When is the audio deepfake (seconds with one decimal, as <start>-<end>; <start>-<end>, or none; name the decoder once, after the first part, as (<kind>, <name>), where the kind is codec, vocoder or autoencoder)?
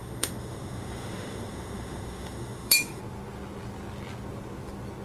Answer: 0.0-3.0 (autoencoder, DAC-VAE)